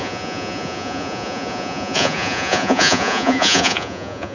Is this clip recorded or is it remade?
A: remade